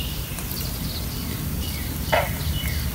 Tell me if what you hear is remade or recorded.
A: recorded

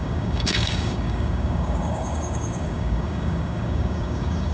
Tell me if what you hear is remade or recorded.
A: remade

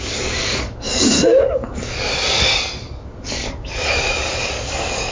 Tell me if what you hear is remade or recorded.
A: remade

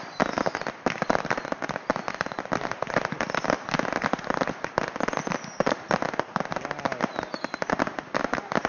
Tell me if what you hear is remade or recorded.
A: recorded